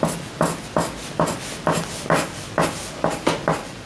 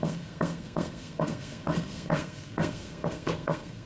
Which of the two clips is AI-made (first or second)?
second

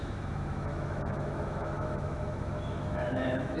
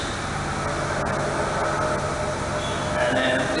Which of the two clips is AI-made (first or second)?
first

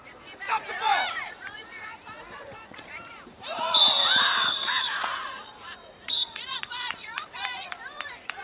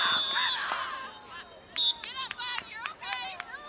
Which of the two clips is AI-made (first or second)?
first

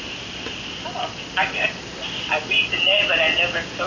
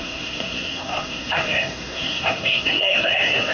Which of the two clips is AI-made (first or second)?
second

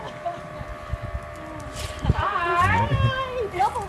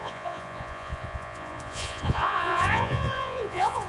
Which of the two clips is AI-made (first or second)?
second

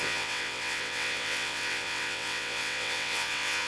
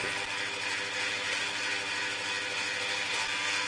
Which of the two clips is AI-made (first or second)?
first